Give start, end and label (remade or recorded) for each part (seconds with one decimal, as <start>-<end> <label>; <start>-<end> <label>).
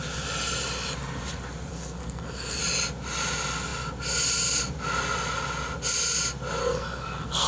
0.0-1.7 recorded; 1.7-2.6 remade; 2.6-6.6 recorded; 6.6-7.5 remade